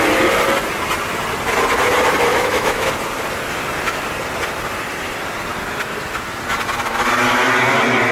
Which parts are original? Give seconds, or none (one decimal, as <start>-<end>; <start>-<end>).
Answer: 0.0-2.3; 2.9-8.1